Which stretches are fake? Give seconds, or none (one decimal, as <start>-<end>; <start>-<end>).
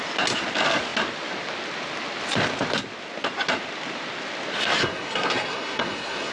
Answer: 4.8-6.3